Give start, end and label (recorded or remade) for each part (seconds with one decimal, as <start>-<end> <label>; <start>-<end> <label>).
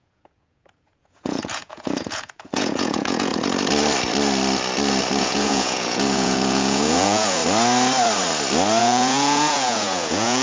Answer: 0.0-3.3 remade; 3.3-5.2 recorded; 5.2-7.4 remade; 7.4-8.8 recorded; 8.8-10.4 remade